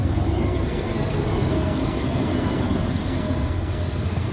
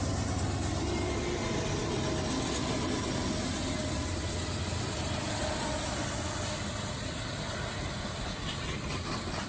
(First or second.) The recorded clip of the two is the second